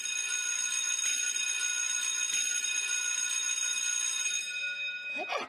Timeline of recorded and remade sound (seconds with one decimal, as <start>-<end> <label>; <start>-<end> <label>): 0.0-5.5 recorded